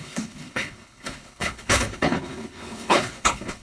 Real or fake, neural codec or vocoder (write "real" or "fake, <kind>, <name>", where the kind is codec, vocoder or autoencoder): fake, codec, HILCodec